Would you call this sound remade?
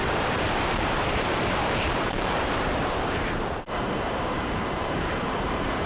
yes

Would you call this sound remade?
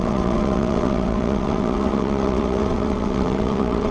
yes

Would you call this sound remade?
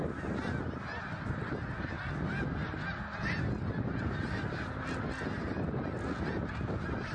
no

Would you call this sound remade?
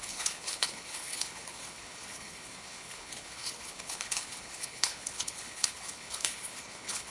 yes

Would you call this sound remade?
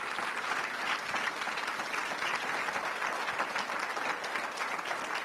no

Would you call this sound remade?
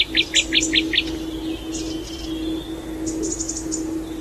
no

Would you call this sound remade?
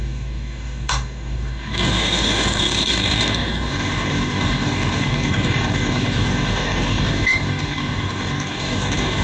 yes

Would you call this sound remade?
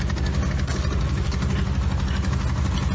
no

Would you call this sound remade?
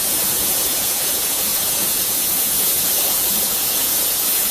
yes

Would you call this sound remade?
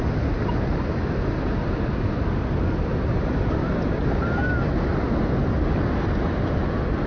no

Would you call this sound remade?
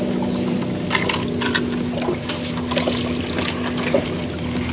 no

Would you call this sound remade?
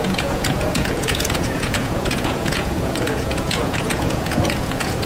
yes